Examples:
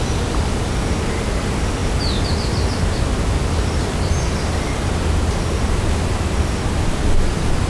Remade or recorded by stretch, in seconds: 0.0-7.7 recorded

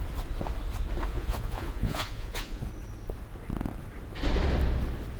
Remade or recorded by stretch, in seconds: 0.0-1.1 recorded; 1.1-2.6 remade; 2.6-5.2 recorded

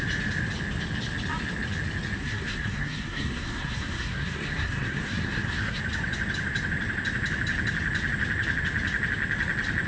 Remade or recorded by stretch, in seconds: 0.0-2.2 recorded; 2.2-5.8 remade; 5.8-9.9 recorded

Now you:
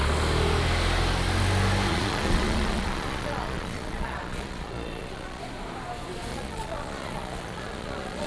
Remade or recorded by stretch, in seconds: 0.0-1.9 recorded; 1.9-5.4 remade; 5.4-6.3 recorded; 6.3-8.3 remade

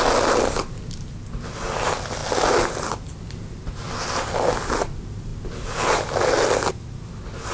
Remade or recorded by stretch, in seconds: 0.0-7.5 recorded